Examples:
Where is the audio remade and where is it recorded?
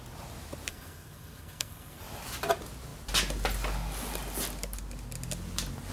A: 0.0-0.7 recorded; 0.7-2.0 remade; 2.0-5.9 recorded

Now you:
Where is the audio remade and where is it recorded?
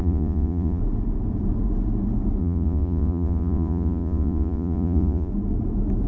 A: 0.0-0.8 remade; 0.8-2.4 recorded; 2.4-5.3 remade; 5.3-6.1 recorded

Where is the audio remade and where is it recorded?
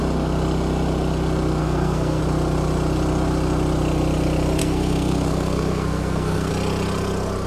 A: 0.0-1.6 recorded; 1.6-2.2 remade; 2.2-4.6 recorded; 4.6-6.5 remade; 6.5-7.5 recorded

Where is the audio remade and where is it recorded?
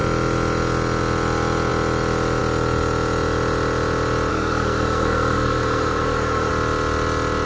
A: 0.0-4.3 recorded; 4.3-6.5 remade; 6.5-7.5 recorded